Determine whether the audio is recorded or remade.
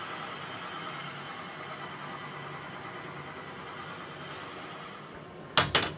recorded